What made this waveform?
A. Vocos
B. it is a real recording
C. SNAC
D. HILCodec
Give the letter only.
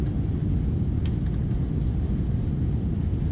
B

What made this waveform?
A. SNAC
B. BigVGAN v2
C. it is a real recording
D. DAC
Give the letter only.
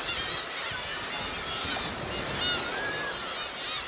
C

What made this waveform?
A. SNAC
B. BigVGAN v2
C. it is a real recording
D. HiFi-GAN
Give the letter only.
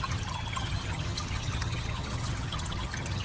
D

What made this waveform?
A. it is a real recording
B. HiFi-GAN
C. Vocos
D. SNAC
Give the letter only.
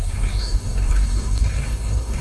D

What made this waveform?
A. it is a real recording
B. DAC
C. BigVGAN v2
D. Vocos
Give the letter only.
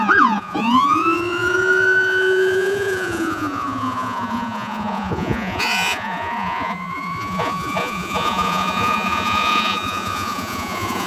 D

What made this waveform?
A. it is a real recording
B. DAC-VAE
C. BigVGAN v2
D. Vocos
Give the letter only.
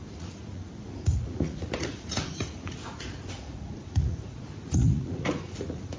D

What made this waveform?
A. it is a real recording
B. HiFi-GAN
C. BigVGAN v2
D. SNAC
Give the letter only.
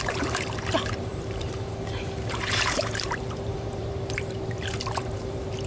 C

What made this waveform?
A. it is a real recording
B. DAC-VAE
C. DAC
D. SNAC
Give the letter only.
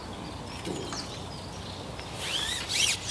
A